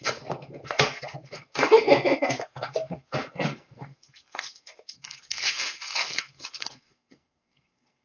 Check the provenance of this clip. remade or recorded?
remade